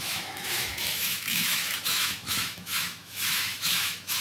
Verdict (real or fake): fake